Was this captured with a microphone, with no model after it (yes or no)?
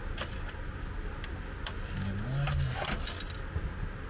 yes